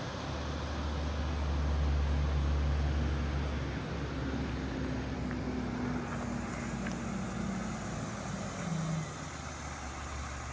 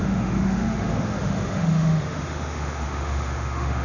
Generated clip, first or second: second